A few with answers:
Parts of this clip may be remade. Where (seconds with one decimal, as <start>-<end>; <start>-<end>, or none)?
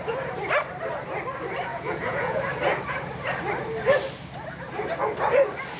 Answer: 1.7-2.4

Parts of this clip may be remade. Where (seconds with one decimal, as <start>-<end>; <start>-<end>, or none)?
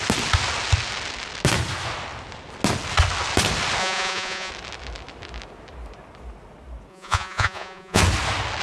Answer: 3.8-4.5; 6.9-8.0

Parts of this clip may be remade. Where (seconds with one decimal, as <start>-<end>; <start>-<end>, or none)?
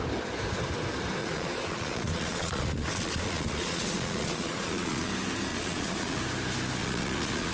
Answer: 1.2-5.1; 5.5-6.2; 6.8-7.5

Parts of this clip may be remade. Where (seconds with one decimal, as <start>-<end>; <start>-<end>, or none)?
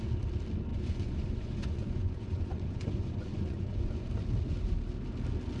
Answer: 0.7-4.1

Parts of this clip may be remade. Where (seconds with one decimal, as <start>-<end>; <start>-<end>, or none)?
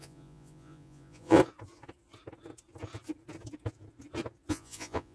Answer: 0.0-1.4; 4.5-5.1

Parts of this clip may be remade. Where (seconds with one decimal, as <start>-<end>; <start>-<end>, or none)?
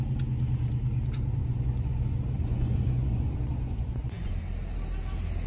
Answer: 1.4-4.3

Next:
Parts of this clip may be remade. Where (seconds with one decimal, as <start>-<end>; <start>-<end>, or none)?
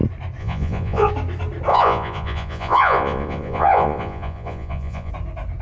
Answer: 0.4-1.1; 1.7-5.1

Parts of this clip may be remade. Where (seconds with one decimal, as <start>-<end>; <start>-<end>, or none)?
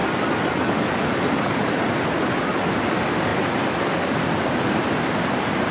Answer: none